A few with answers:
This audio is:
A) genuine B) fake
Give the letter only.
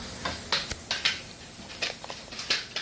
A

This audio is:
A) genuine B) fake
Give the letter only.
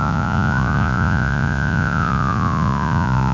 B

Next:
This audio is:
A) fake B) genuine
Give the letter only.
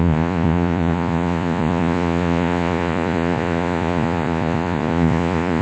A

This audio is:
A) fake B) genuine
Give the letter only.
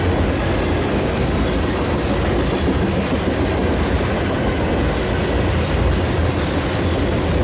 B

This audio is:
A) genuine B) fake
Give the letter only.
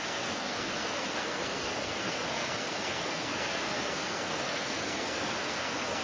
B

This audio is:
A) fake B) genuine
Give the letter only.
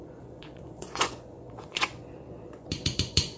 A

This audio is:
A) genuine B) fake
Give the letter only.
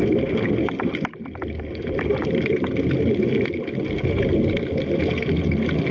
A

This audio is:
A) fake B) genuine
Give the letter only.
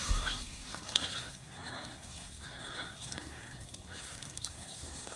A